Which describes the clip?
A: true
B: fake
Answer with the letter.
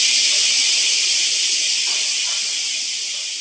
A